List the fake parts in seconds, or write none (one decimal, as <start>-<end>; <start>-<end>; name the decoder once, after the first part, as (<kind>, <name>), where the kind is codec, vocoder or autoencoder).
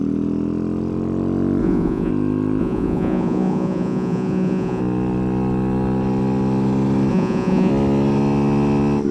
1.6-2.1 (vocoder, Vocos); 2.6-4.8; 7.1-7.7